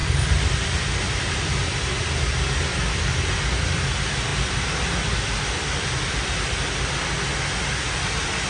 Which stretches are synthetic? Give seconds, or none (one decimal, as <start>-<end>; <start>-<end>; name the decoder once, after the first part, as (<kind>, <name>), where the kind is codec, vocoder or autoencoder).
0.0-3.0 (vocoder, BigVGAN v2)